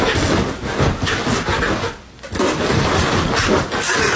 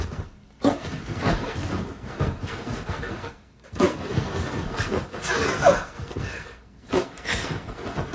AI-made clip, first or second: second